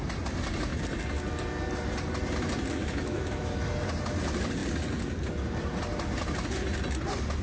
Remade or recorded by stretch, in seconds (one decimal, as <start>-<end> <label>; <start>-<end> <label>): 0.0-2.8 recorded; 2.8-3.5 remade; 3.5-7.4 recorded

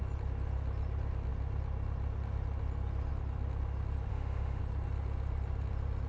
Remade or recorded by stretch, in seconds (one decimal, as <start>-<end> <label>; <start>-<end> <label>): 0.0-4.1 recorded; 4.1-4.6 remade; 4.6-6.1 recorded